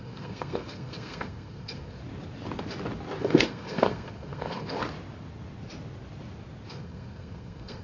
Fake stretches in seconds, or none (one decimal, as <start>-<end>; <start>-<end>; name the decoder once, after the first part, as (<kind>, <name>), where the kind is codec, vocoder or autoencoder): 0.0-2.0 (codec, SNAC); 3.2-4.8; 6.7-7.8